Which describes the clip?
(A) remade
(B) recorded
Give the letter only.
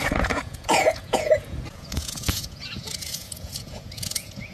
A